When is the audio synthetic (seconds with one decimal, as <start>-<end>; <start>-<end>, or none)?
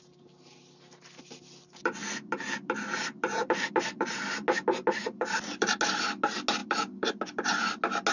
none